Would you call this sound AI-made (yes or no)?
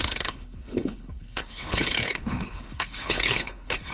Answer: yes